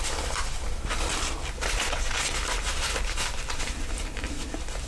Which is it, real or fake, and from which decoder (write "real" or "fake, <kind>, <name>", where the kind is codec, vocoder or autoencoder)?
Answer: real